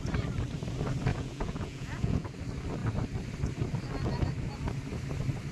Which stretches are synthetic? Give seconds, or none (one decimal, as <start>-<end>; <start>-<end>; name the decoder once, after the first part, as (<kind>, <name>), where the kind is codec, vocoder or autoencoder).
1.1-2.3 (vocoder, Vocos)